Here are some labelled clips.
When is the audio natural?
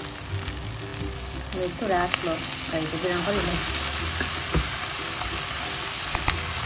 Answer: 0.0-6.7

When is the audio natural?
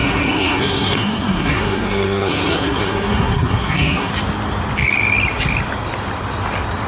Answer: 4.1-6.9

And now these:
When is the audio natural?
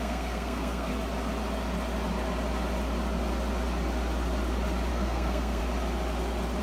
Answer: 0.9-4.9; 5.6-6.6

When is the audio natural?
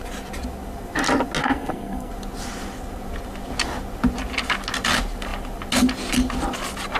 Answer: 0.0-1.4; 2.1-7.0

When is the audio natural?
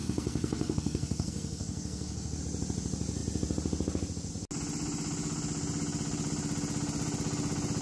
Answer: 2.4-7.8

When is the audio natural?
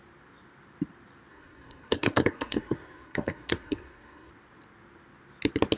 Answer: 0.0-1.3; 4.3-5.8